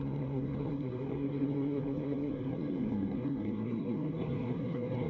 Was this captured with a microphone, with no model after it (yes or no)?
no